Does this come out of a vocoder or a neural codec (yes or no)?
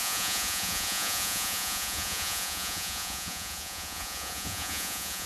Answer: yes